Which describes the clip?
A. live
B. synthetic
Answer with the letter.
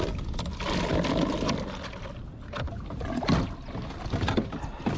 A